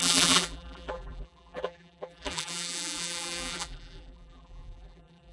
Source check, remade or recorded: remade